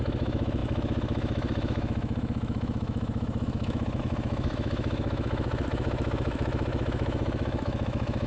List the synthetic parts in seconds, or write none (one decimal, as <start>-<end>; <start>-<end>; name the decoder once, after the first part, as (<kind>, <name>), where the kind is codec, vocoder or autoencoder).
0.0-8.3 (autoencoder, DAC-VAE)